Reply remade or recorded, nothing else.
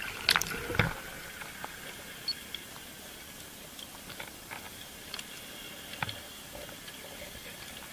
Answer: recorded